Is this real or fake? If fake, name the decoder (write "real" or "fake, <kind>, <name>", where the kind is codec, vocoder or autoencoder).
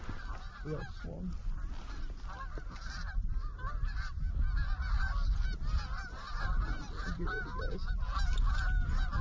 real